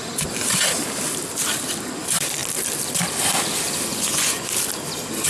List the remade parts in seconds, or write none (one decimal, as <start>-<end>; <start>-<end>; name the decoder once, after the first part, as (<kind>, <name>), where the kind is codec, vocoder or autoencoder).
3.9-4.5 (vocoder, Vocos)